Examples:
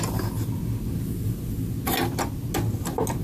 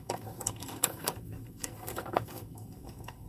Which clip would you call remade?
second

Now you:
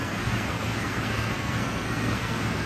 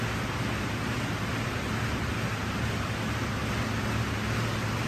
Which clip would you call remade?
first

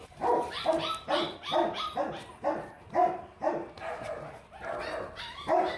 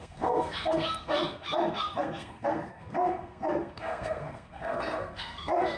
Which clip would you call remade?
second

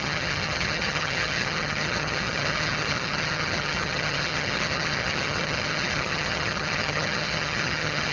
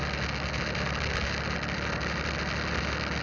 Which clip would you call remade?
first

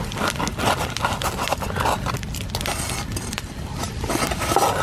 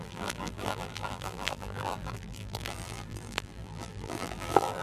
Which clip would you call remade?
second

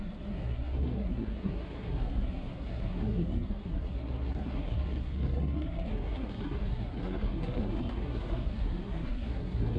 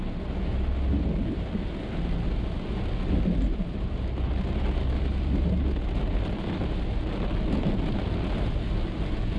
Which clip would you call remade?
first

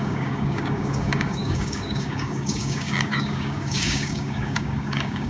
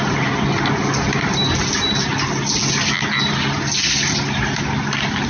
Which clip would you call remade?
first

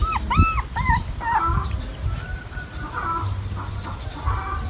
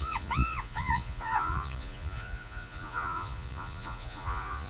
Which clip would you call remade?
second